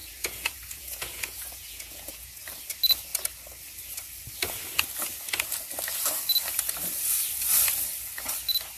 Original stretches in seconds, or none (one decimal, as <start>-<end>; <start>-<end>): 2.4-8.8